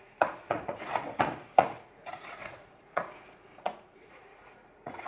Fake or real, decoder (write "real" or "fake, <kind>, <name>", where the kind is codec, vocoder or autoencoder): fake, vocoder, Vocos